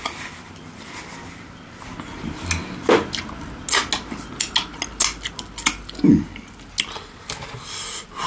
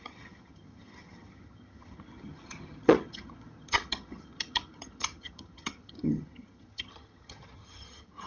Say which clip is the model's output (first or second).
second